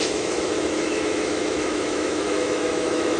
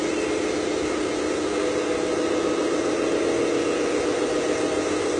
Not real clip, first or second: first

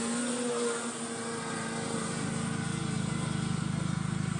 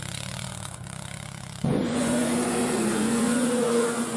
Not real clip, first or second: second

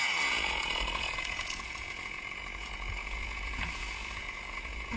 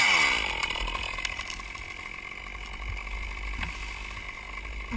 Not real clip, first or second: first